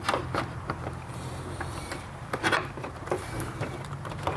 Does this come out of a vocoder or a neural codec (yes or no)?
yes